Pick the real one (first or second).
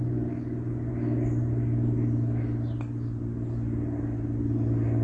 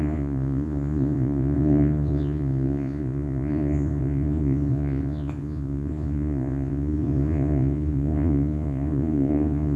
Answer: first